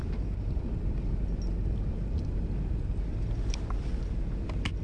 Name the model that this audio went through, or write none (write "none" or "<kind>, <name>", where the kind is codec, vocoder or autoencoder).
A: none